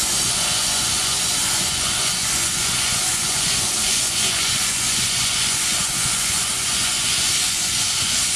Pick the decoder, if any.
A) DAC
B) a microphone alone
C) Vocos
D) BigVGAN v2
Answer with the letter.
C